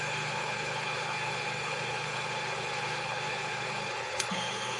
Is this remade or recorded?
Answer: remade